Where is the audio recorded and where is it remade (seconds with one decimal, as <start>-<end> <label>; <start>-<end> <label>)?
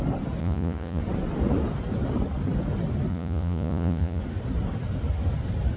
0.0-0.4 recorded; 0.4-1.0 remade; 1.0-3.1 recorded; 3.1-4.2 remade; 4.2-5.8 recorded